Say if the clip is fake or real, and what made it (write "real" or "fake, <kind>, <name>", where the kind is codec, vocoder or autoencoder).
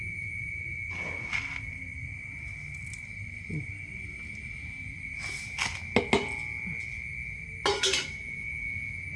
real